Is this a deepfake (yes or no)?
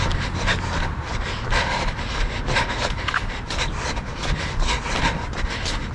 no